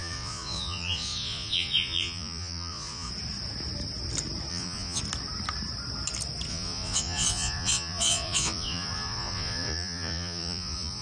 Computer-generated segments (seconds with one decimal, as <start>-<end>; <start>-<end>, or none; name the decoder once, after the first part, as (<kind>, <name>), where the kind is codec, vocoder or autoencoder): 0.0-3.1 (vocoder, Vocos); 4.5-5.0; 6.5-11.0

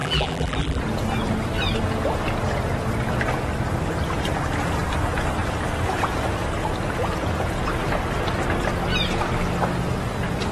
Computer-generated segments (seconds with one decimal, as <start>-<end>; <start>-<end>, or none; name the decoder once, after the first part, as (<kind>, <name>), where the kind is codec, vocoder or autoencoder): 0.0-0.8 (vocoder, BigVGAN v2)